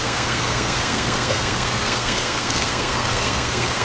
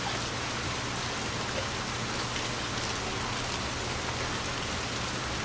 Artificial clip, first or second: first